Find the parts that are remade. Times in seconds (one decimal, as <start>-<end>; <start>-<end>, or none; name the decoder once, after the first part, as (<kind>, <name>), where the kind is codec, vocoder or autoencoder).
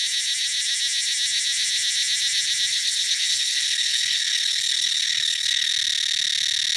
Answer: 2.7-5.7 (codec, HILCodec)